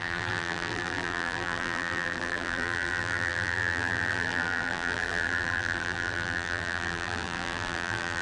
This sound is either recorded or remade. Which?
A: remade